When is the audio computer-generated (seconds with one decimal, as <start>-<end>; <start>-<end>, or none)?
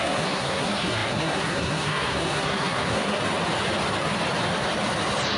0.0-3.2